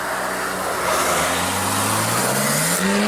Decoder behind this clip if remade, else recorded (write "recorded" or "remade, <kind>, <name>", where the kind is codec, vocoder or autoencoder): recorded